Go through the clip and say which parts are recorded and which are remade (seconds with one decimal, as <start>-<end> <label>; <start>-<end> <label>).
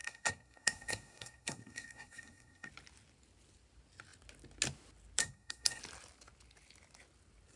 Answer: 0.0-2.7 remade; 2.7-5.2 recorded; 5.2-5.8 remade; 5.8-7.6 recorded